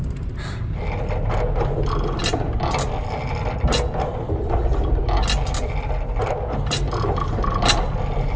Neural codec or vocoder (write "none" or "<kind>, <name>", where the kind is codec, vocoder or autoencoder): none